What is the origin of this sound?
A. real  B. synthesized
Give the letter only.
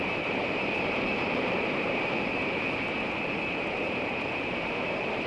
B